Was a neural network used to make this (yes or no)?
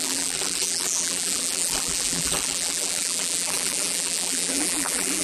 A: yes